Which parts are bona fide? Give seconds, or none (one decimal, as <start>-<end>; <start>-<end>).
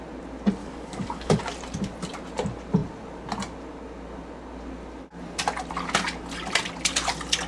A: 0.0-0.6; 1.4-7.5